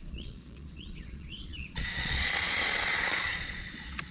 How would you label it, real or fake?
fake